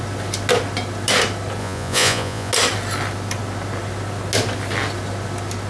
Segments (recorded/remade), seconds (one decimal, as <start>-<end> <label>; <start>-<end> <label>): 0.0-1.6 recorded; 1.6-2.5 remade; 2.5-5.7 recorded

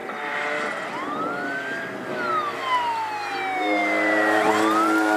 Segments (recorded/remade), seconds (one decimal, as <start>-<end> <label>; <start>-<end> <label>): 0.0-5.2 recorded

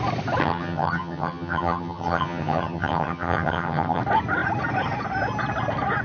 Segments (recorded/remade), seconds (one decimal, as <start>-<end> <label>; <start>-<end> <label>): 0.0-0.4 recorded; 0.4-4.0 remade; 4.0-6.0 recorded

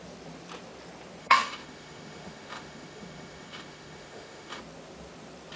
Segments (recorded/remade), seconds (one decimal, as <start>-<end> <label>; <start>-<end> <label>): 0.0-1.2 recorded; 1.2-4.6 remade; 4.6-5.6 recorded

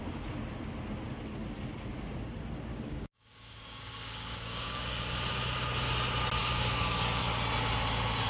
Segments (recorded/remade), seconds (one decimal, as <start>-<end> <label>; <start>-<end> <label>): 0.0-2.7 recorded; 2.7-5.0 remade; 5.0-6.4 recorded; 6.4-7.2 remade; 7.2-8.3 recorded

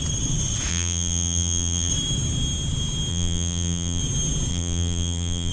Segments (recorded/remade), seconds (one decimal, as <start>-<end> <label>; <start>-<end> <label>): 0.0-0.7 recorded; 0.7-1.9 remade; 1.9-3.1 recorded; 3.1-4.0 remade; 4.0-4.5 recorded; 4.5-5.5 remade

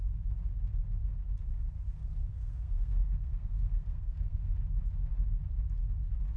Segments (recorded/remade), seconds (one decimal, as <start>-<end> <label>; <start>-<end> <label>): 0.0-2.2 recorded; 2.2-4.5 remade; 4.5-6.4 recorded